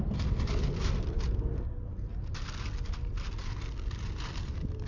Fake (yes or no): no